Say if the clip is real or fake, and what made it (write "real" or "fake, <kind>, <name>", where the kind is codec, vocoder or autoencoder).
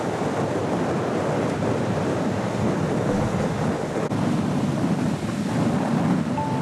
real